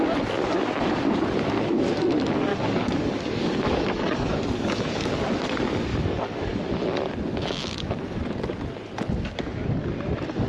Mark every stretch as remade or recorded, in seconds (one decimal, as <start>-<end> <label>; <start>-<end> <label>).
0.0-2.5 recorded; 2.5-5.1 remade; 5.1-5.9 recorded; 5.9-6.7 remade; 6.7-7.6 recorded; 7.6-8.2 remade; 8.2-10.5 recorded

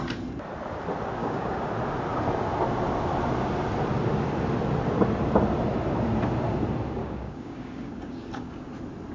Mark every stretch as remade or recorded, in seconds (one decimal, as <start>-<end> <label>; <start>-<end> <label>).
0.0-1.2 recorded; 1.2-1.7 remade; 1.7-7.0 recorded; 7.0-8.7 remade; 8.7-9.1 recorded

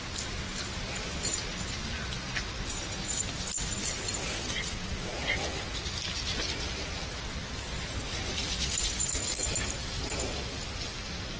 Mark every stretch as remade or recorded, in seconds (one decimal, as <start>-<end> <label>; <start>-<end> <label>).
0.0-11.4 recorded